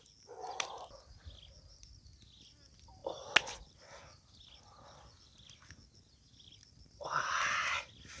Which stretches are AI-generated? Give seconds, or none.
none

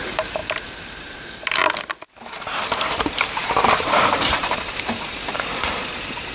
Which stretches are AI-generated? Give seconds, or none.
0.0-0.4 (vocoder, BigVGAN v2); 1.0-1.6; 3.0-6.3